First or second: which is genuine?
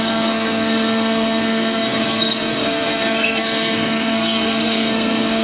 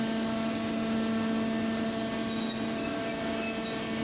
second